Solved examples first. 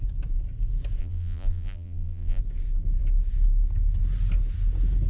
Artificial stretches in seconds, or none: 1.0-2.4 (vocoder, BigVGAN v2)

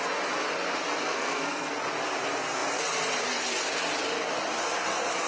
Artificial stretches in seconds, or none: 1.0-1.7 (codec, SNAC)

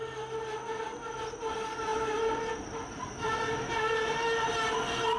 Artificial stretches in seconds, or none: none

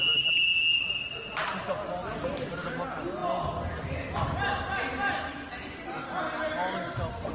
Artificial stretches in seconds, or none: none

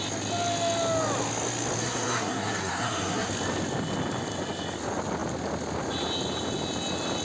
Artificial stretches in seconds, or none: 1.8-3.3 (codec, SNAC)

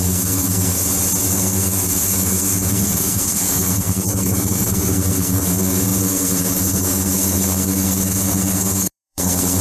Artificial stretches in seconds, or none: 0.0-0.8 (codec, SNAC); 1.3-9.6